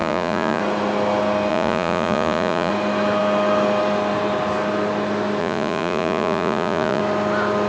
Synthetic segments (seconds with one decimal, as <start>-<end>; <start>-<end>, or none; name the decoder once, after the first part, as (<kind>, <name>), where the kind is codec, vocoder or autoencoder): 0.0-0.6 (vocoder, Vocos); 1.5-2.7; 5.4-7.0